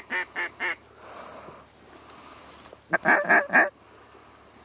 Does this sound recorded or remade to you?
recorded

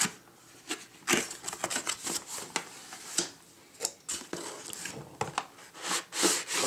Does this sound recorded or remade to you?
recorded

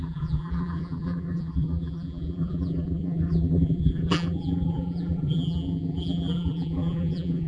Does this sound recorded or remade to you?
remade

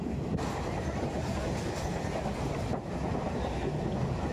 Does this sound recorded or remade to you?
recorded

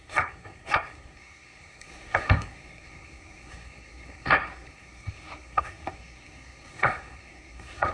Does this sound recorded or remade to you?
remade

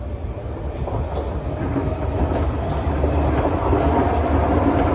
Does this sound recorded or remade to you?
recorded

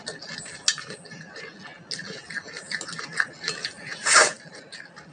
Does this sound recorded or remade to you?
recorded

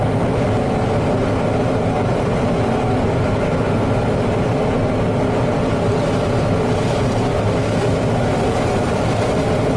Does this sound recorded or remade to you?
recorded